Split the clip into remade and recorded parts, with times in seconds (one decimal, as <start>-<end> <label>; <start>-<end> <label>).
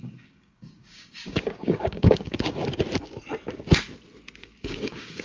0.0-2.6 remade; 2.6-4.4 recorded; 4.4-5.2 remade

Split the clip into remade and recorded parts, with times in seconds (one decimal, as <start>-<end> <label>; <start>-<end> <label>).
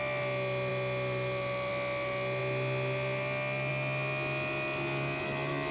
0.0-5.7 recorded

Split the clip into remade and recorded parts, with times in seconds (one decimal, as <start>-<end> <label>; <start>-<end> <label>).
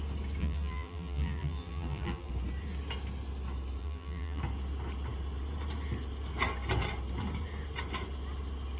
0.0-0.4 recorded; 0.4-2.3 remade; 2.3-3.8 recorded; 3.8-4.4 remade; 4.4-8.8 recorded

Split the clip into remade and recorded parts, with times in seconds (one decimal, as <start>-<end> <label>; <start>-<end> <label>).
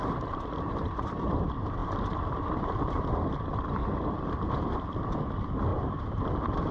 0.0-1.2 remade; 1.2-3.8 recorded; 3.8-4.5 remade; 4.5-5.7 recorded; 5.7-6.2 remade; 6.2-6.7 recorded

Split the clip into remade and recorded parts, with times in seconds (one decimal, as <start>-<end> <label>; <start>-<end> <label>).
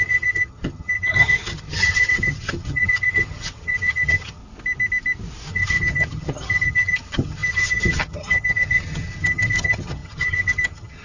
0.0-4.4 remade; 4.4-5.5 recorded; 5.5-11.0 remade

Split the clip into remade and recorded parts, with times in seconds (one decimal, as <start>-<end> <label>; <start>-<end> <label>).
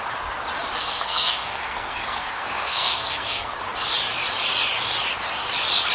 0.0-0.8 recorded; 0.8-3.6 remade; 3.6-5.9 recorded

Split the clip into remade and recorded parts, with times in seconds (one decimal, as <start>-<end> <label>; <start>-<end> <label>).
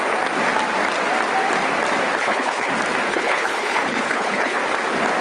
0.0-2.2 recorded; 2.2-2.7 remade; 2.7-3.1 recorded; 3.1-4.6 remade; 4.6-5.2 recorded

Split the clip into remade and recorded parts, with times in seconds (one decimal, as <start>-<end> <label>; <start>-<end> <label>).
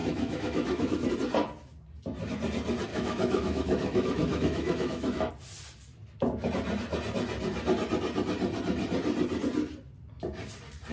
0.0-1.1 remade; 1.1-2.9 recorded; 2.9-5.3 remade; 5.3-10.9 recorded